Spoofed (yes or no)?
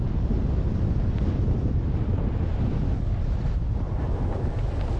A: no